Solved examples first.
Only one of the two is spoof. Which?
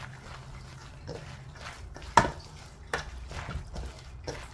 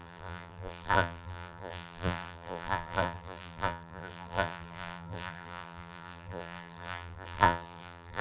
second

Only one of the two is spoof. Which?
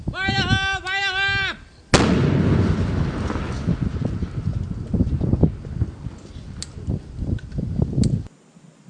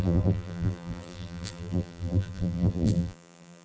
second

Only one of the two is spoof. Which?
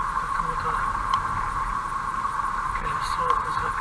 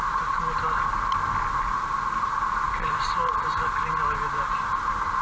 first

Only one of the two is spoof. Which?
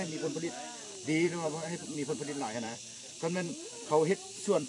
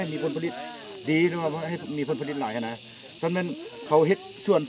first